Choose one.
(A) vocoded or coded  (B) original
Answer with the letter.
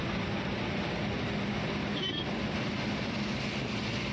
B